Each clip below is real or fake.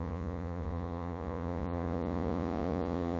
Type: fake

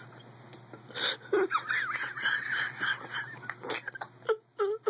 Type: real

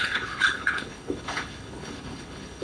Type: fake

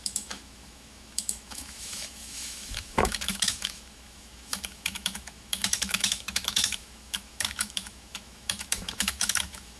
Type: fake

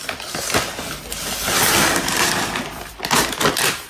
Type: real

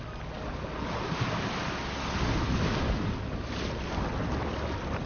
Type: real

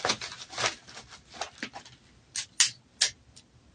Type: real